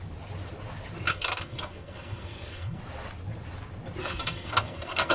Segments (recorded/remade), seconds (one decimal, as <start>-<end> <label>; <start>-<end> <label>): 0.0-1.1 recorded; 1.1-2.8 remade; 2.8-4.0 recorded; 4.0-5.1 remade